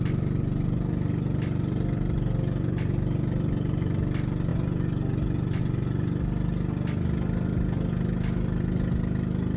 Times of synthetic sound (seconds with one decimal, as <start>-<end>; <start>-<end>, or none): none